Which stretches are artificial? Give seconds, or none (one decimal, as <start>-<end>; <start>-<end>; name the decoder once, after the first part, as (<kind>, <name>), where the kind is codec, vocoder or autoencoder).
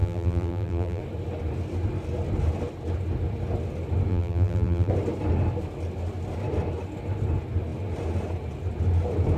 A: 0.0-1.0 (vocoder, BigVGAN v2); 4.1-4.9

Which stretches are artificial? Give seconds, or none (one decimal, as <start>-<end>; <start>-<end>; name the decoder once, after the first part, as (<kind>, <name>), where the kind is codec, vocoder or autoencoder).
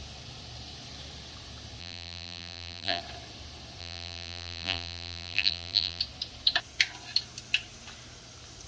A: 1.8-3.0 (vocoder, BigVGAN v2); 3.8-6.0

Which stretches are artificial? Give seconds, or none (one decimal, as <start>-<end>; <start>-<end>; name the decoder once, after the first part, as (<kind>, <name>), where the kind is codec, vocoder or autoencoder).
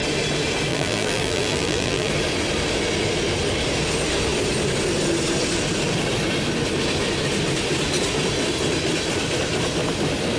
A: 0.7-2.1 (vocoder, BigVGAN v2)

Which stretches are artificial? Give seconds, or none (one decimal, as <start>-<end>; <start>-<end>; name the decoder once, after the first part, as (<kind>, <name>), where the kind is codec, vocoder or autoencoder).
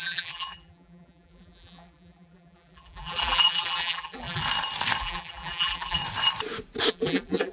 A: 0.0-4.4 (vocoder, BigVGAN v2); 5.0-6.0; 6.9-7.5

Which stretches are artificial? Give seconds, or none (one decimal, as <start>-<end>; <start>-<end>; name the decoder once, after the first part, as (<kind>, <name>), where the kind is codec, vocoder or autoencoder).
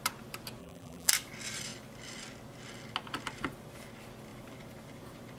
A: 0.6-1.1 (vocoder, BigVGAN v2)